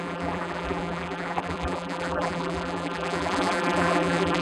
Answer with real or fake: fake